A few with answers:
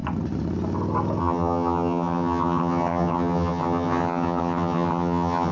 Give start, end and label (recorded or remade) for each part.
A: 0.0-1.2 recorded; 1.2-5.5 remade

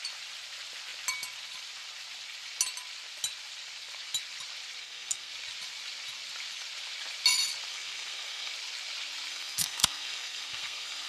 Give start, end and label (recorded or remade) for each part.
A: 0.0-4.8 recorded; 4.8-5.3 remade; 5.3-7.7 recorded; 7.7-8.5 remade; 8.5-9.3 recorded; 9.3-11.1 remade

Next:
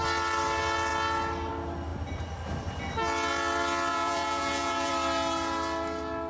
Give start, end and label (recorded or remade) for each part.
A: 0.0-3.9 recorded; 3.9-4.9 remade; 4.9-6.3 recorded

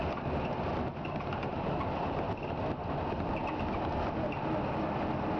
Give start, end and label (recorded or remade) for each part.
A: 0.0-5.4 recorded

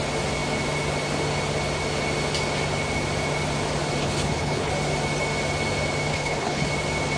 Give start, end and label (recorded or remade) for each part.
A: 0.0-4.0 recorded; 4.0-4.7 remade; 4.7-6.1 recorded; 6.1-6.7 remade; 6.7-7.2 recorded

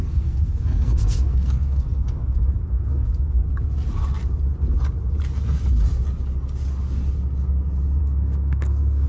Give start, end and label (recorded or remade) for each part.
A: 0.0-3.4 remade; 3.4-8.0 recorded; 8.0-9.1 remade

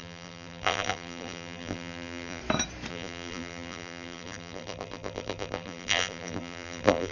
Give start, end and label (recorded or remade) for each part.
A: 0.0-2.4 remade; 2.4-2.9 recorded; 2.9-7.1 remade

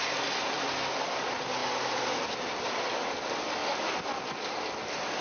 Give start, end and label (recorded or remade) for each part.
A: 0.0-5.2 recorded